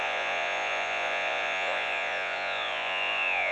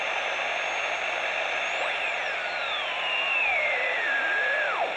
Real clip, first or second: second